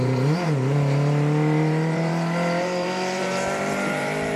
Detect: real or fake fake